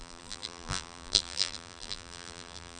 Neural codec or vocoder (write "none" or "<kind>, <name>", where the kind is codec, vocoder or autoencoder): vocoder, BigVGAN v2